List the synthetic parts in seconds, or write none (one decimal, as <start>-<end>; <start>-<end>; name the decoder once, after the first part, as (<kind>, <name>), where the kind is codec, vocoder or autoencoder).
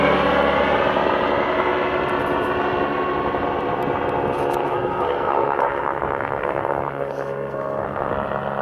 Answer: 4.6-8.1 (codec, SNAC)